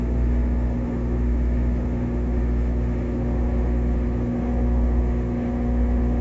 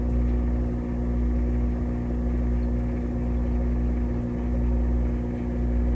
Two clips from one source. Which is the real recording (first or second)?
second